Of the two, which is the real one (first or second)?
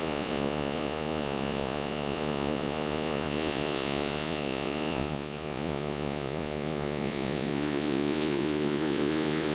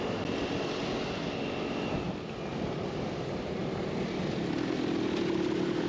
second